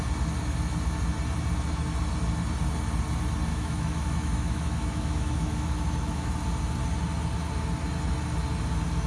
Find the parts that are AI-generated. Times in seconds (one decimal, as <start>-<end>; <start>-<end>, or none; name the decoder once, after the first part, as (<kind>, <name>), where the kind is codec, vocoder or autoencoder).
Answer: 3.5-6.4 (autoencoder, DAC-VAE)